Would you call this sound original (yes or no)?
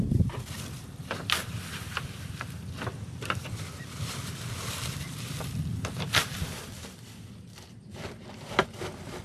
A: no